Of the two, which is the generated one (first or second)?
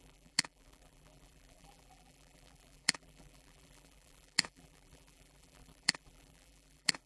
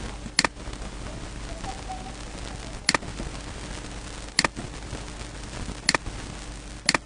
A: first